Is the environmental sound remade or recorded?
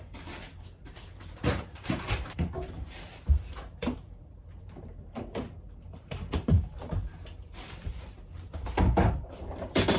remade